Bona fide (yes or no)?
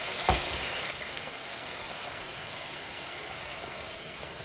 no